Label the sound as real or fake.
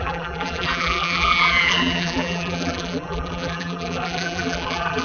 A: fake